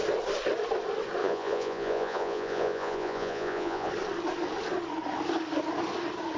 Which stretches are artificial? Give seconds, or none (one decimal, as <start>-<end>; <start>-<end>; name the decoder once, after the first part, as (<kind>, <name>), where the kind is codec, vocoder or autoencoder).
1.2-3.9 (vocoder, Vocos)